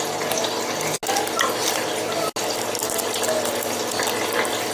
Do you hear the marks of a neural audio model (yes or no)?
no